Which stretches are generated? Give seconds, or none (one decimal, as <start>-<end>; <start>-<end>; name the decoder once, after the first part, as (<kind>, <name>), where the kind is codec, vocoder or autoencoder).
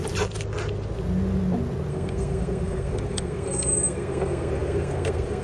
1.9-5.4 (codec, SNAC)